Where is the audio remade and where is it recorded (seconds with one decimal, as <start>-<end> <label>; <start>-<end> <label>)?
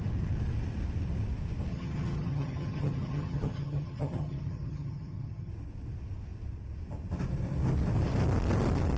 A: 0.0-1.7 recorded; 1.7-5.5 remade; 5.5-9.0 recorded